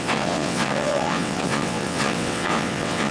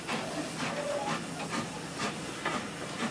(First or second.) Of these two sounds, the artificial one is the first